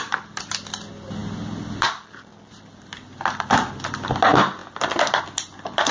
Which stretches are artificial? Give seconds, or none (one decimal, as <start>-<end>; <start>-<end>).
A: none